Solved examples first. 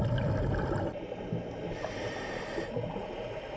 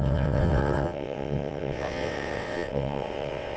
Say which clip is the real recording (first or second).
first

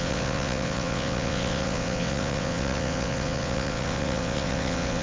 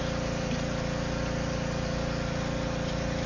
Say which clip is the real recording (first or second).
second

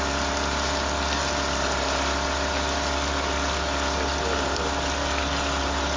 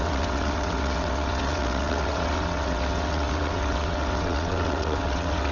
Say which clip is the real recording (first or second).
first